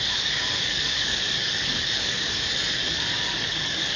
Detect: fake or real fake